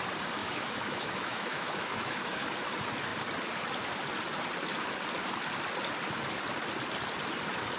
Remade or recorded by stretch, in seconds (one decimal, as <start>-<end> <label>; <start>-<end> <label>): 0.0-0.4 recorded; 0.4-2.5 remade; 2.5-7.8 recorded